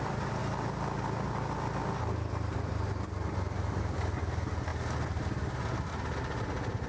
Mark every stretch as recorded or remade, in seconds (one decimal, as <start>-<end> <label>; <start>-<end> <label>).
0.0-6.9 recorded